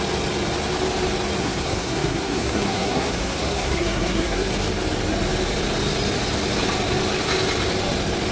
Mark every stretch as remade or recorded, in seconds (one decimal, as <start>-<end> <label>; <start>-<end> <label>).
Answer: 0.0-1.4 recorded; 1.4-4.5 remade; 4.5-8.3 recorded